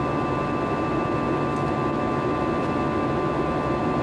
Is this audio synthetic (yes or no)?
no